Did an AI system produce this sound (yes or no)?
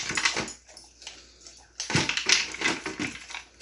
no